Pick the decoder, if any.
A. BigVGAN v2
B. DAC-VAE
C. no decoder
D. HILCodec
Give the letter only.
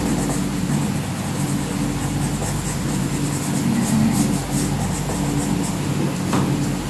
C